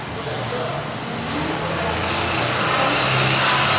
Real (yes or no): yes